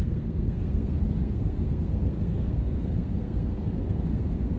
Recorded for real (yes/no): no